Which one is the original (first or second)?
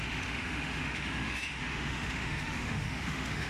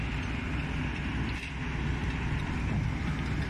second